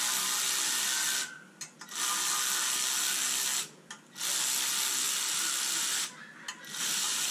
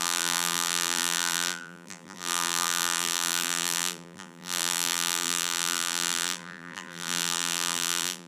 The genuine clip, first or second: first